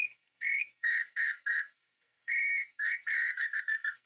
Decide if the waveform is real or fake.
fake